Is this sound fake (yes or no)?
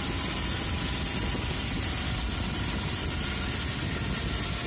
no